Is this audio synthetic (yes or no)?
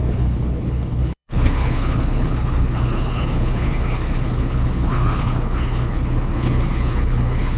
yes